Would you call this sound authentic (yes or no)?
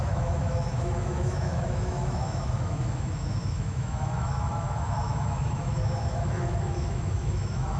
no